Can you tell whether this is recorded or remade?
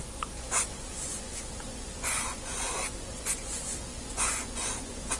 remade